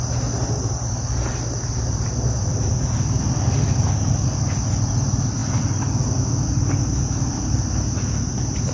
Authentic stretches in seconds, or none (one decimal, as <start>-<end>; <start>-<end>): 0.0-8.7